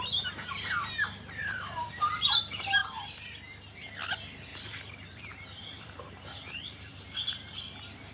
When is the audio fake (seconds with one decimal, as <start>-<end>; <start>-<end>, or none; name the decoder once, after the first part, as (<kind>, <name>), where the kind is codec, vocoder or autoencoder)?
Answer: 1.4-2.4 (vocoder, BigVGAN v2); 4.5-7.6

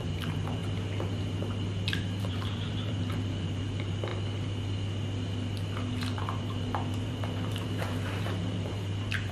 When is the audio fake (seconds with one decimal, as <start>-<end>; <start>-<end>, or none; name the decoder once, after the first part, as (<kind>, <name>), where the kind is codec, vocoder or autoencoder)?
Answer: 0.0-0.6 (vocoder, BigVGAN v2); 2.2-4.1; 5.9-9.3

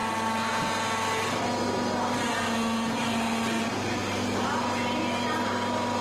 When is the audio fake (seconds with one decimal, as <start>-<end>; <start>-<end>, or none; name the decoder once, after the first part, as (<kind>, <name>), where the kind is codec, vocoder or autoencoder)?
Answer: none